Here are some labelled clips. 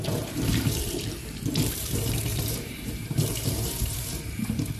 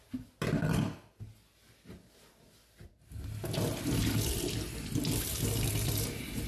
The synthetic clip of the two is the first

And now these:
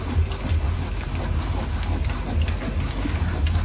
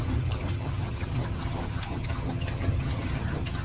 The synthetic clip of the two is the second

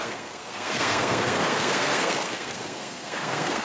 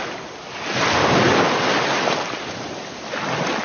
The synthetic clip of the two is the first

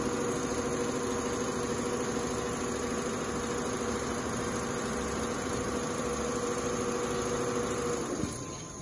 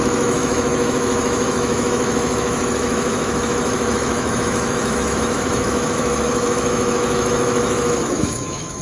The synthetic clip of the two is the second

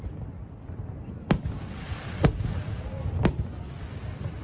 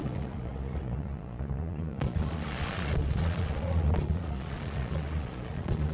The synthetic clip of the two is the second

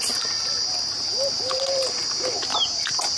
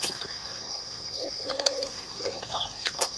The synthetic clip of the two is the second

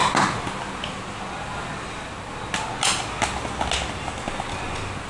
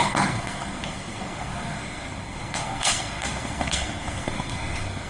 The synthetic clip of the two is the second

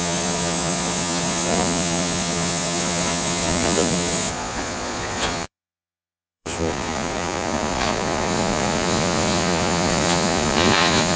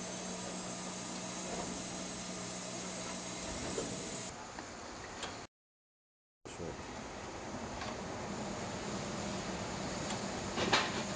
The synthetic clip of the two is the first